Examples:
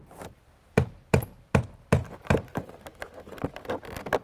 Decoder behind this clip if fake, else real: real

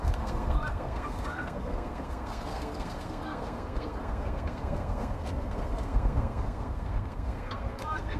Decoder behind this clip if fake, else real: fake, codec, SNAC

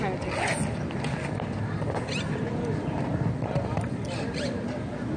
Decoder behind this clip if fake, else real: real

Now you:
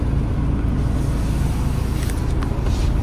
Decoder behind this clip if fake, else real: real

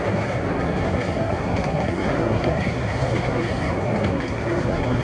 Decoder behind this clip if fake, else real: fake, codec, SNAC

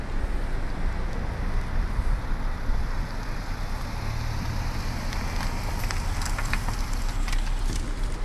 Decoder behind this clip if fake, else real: real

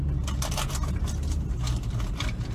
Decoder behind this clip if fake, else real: real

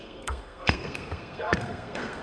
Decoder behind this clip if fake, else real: fake, codec, SNAC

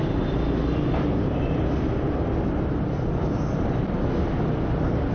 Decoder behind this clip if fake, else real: real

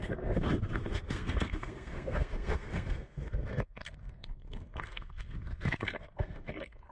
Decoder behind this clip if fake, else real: fake, codec, SNAC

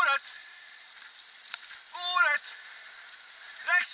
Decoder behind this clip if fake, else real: real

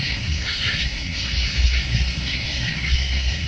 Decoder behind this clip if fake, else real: fake, codec, SNAC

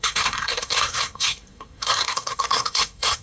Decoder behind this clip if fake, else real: fake, codec, SNAC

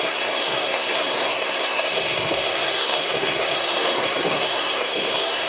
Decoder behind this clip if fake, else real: fake, codec, SNAC